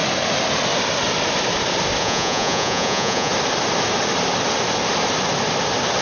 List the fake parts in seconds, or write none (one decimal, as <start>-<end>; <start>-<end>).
2.0-3.3